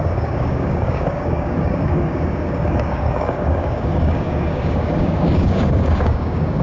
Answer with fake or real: fake